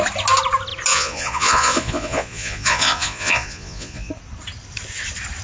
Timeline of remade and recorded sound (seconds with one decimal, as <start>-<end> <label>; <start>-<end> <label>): 0.0-0.9 recorded; 0.9-4.1 remade; 4.1-5.4 recorded